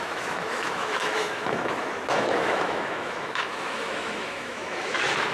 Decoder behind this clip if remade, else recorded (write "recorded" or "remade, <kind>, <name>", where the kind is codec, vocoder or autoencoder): remade, autoencoder, DAC-VAE